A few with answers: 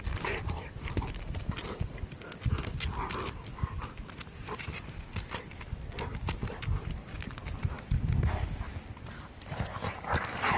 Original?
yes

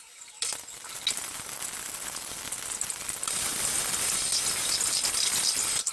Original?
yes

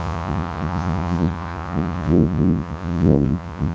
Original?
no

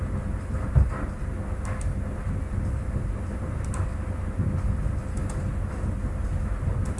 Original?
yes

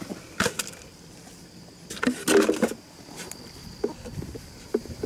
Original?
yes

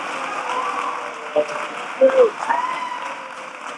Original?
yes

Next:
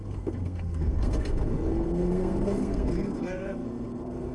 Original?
no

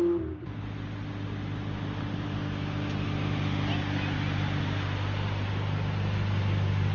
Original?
yes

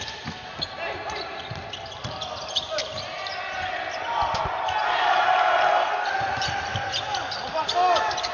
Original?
yes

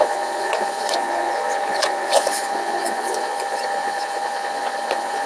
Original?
no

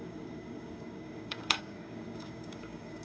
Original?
no